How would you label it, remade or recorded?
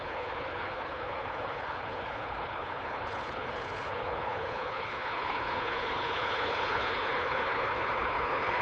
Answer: remade